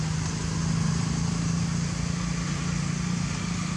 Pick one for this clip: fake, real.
real